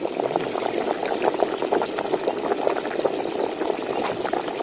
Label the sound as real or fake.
real